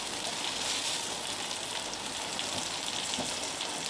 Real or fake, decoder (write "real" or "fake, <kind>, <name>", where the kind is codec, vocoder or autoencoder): real